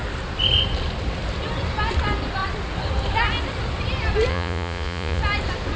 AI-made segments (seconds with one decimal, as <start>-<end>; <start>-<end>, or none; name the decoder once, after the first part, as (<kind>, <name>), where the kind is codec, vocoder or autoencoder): 4.3-5.2 (vocoder, Vocos)